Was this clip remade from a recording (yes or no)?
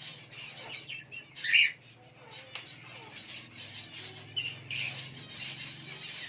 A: no